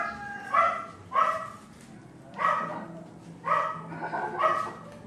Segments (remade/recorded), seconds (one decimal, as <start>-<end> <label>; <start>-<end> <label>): 0.0-1.2 recorded; 1.2-2.0 remade; 2.0-5.1 recorded